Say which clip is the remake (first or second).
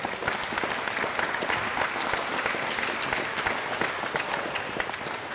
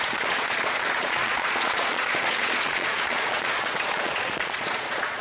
second